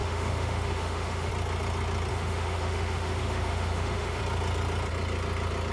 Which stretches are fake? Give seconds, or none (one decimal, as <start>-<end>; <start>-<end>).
0.0-1.3; 2.1-4.2